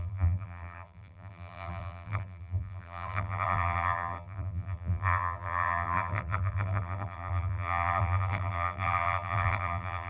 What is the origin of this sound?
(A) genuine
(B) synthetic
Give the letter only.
B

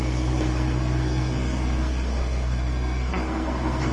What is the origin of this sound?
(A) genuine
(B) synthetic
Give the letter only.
B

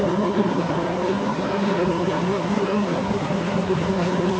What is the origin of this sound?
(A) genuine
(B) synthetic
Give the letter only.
B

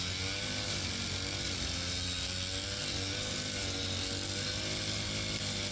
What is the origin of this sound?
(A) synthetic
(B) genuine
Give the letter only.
B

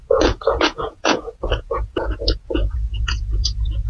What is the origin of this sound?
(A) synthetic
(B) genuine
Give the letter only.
A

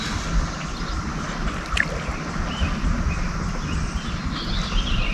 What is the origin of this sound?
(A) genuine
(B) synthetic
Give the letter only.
A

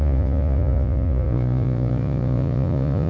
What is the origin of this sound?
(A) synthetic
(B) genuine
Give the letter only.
A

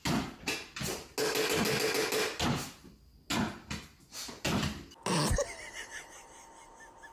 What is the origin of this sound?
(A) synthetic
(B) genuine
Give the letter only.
B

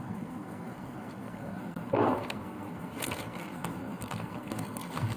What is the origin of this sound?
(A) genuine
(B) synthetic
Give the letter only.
B